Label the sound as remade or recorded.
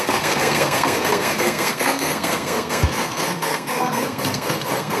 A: remade